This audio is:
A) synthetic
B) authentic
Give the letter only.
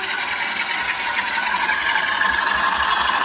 B